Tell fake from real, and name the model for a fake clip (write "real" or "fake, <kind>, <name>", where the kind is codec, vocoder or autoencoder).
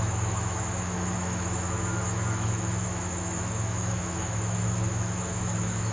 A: fake, autoencoder, DAC-VAE